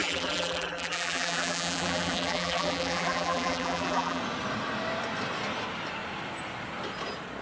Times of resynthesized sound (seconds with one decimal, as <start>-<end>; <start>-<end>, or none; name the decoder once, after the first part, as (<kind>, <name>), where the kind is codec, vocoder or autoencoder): 0.0-4.2 (vocoder, BigVGAN v2)